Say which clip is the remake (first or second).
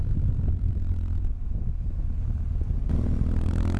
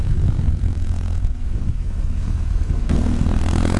second